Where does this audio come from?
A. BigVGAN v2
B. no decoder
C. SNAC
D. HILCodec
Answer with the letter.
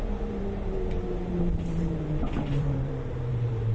A